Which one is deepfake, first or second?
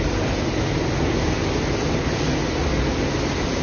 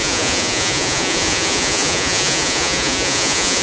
second